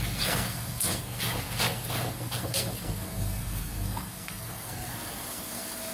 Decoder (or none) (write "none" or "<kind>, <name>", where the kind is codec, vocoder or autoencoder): codec, SNAC